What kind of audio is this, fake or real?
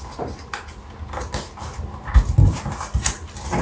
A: real